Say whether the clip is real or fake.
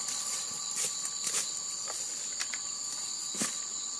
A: fake